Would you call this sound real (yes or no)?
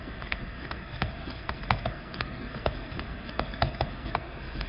no